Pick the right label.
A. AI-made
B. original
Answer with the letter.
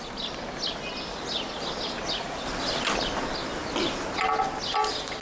B